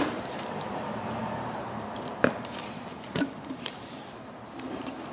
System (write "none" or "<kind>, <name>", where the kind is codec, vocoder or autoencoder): vocoder, BigVGAN v2